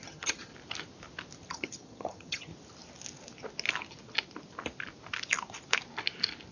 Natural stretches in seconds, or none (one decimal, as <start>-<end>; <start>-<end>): 0.5-1.5; 2.5-6.5